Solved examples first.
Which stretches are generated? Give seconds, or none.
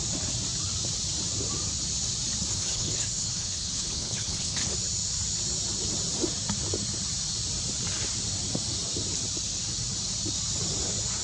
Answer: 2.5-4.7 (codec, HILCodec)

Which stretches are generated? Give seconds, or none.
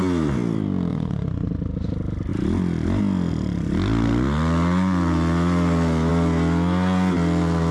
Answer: 0.9-1.5 (vocoder, Vocos)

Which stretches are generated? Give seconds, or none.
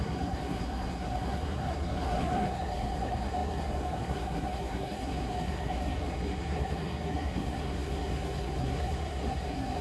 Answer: 0.0-9.8 (codec, SNAC)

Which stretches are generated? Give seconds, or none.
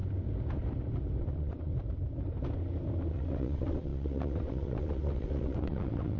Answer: 1.2-1.7 (vocoder, WaveNeXt); 3.1-6.2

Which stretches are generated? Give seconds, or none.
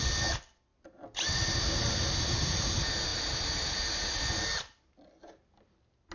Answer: none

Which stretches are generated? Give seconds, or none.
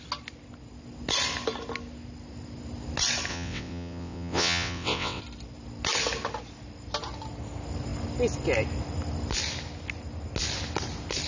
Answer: 3.3-5.2 (vocoder, WaveNeXt)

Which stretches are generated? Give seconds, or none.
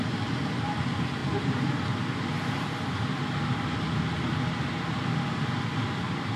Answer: none